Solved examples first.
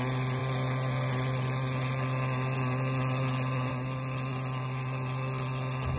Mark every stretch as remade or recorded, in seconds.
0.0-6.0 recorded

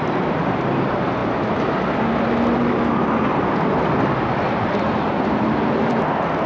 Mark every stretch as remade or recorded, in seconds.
0.0-6.5 recorded

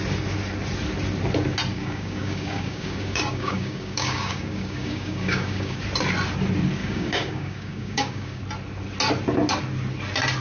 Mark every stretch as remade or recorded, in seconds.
0.0-1.7 recorded; 1.7-5.8 remade; 5.8-6.8 recorded; 6.8-8.4 remade; 8.4-10.4 recorded

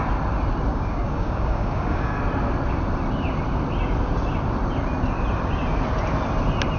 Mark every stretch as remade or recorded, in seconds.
0.0-0.7 recorded; 0.7-2.2 remade; 2.2-6.8 recorded

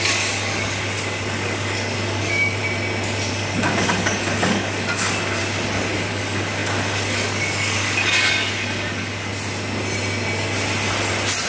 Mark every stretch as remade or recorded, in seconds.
0.0-2.6 remade; 2.6-3.3 recorded; 3.3-5.4 remade; 5.4-6.1 recorded; 6.1-9.3 remade; 9.3-11.5 recorded

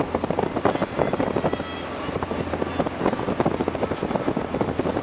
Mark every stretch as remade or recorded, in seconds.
0.0-5.0 recorded

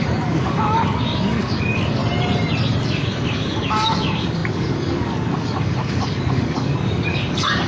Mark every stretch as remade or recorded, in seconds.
0.0-2.0 remade; 2.0-2.8 recorded; 2.8-7.7 remade